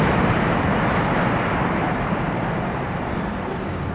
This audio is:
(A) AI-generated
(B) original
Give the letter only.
A